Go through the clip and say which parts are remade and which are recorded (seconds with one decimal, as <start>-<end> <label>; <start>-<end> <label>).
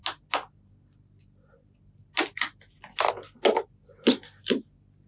0.0-5.1 recorded